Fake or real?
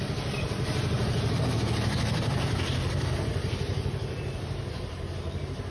fake